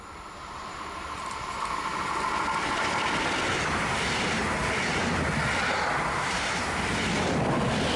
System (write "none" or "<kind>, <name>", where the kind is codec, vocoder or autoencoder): none